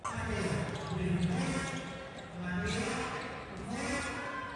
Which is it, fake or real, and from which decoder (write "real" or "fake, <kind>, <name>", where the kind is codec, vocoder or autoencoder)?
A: real